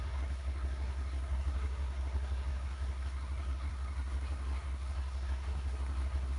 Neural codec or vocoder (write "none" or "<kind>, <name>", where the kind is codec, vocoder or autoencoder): codec, SNAC